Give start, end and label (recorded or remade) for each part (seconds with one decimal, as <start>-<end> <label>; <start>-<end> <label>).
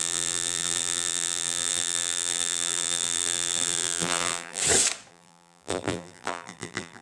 0.0-4.6 remade; 4.6-5.1 recorded; 5.1-7.0 remade